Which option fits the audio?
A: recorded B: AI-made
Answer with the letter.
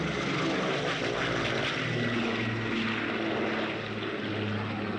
A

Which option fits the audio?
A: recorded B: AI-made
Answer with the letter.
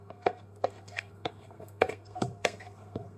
B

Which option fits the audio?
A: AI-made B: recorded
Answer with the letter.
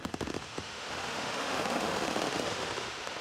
A